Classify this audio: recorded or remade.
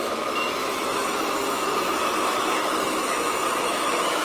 remade